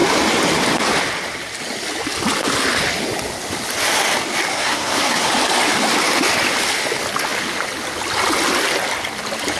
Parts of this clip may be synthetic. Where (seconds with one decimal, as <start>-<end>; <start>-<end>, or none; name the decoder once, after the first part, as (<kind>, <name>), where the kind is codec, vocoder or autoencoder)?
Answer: 4.5-5.3 (codec, SNAC)